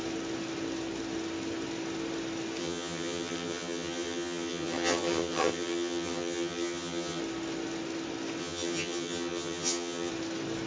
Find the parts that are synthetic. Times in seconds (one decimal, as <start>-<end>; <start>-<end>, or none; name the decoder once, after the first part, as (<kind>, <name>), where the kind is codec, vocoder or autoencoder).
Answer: 2.6-7.2 (vocoder, HiFi-GAN); 8.4-10.1